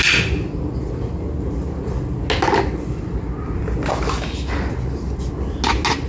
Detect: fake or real real